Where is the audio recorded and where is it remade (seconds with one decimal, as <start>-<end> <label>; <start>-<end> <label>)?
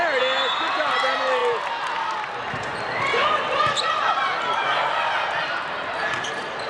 0.0-6.7 recorded